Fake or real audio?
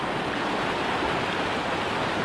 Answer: real